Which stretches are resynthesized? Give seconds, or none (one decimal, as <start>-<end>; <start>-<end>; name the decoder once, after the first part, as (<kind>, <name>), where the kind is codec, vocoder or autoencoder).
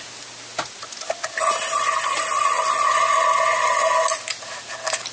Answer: none